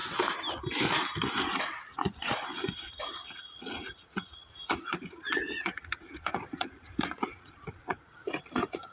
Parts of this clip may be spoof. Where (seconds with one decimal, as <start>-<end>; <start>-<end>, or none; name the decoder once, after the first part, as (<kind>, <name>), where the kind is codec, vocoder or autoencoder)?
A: 1.4-8.9 (vocoder, Vocos)